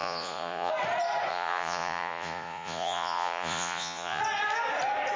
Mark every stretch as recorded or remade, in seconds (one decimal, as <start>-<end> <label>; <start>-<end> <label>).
0.0-0.7 remade; 0.7-1.3 recorded; 1.3-4.2 remade; 4.2-5.2 recorded